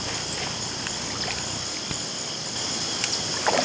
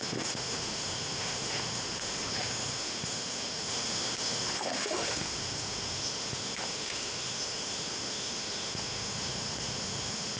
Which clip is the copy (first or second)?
second